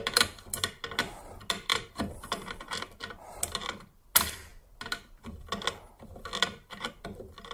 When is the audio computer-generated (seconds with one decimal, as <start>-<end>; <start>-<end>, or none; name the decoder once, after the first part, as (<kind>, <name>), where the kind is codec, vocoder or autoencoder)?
1.7-3.1 (vocoder, BigVGAN v2)